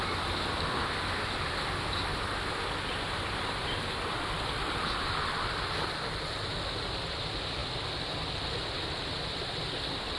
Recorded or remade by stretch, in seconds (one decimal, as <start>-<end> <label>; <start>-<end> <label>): 0.0-10.2 recorded